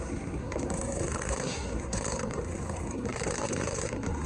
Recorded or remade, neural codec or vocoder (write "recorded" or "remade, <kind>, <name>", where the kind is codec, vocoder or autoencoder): remade, codec, SNAC